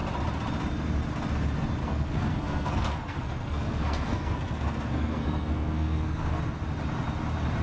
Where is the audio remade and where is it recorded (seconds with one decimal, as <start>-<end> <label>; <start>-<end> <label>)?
0.0-1.8 recorded; 1.8-6.4 remade; 6.4-7.6 recorded